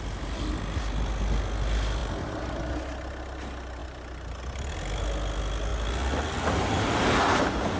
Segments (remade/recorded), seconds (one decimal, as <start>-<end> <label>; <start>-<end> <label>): 0.0-7.8 recorded